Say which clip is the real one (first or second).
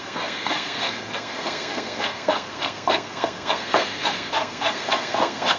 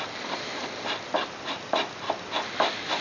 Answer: second